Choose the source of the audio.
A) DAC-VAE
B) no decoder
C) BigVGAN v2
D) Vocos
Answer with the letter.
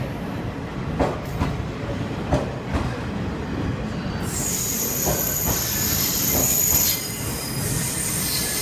B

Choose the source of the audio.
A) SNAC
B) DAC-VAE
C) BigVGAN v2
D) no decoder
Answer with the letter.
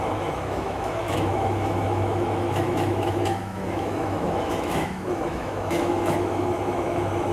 B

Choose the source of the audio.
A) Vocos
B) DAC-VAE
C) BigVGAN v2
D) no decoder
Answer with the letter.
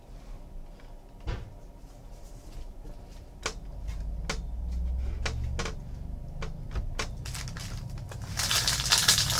D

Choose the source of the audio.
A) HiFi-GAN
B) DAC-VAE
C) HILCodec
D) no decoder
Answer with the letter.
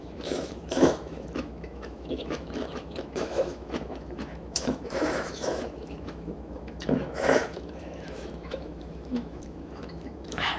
B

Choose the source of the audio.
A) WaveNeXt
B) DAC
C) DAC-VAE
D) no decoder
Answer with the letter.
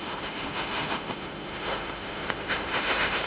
C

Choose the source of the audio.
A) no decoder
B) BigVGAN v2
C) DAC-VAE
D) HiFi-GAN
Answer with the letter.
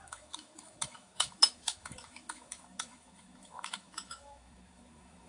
C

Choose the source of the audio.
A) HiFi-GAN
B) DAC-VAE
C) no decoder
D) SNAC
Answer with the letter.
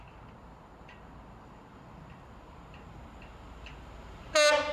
C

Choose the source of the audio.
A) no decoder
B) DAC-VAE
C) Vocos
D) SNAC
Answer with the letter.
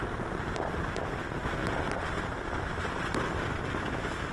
A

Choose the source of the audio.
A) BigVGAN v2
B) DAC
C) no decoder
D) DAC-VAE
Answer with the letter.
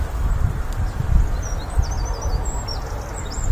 C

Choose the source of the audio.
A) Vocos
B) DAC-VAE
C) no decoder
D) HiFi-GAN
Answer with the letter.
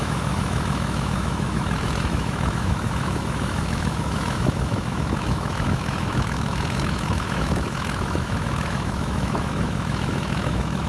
B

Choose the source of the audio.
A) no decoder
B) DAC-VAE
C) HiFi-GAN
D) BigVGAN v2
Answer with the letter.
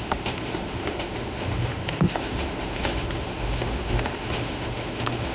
B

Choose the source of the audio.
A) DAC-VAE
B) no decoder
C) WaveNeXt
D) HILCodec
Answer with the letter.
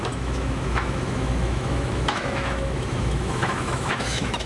A